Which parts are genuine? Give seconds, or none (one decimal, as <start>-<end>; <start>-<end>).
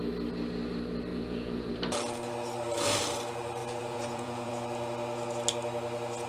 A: 0.0-1.1; 1.7-3.6; 4.5-6.3